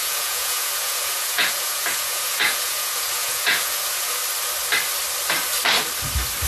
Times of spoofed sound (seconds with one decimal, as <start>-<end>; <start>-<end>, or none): 0.0-4.2